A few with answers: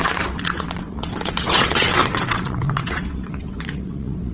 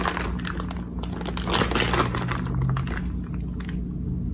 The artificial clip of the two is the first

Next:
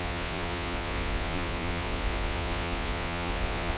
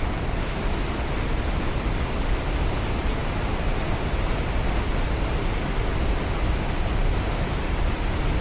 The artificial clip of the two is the first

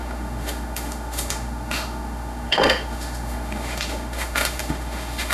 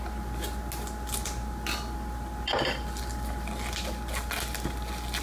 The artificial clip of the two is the first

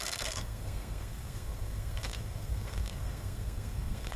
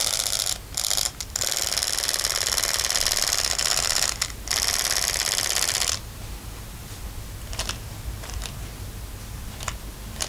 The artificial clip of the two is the first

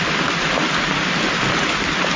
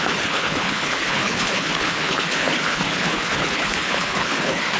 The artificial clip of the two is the second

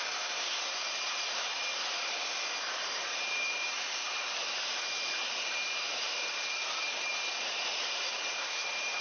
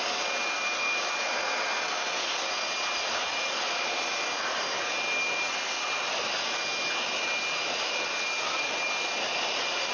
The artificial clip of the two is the first